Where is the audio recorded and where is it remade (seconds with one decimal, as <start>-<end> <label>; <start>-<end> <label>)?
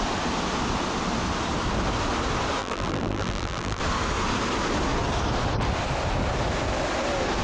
0.0-2.6 recorded; 2.6-3.8 remade; 3.8-7.4 recorded